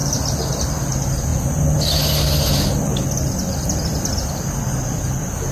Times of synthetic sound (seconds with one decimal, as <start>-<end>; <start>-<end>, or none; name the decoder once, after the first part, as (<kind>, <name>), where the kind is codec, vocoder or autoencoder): none